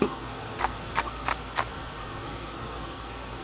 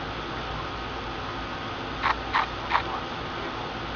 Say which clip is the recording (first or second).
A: second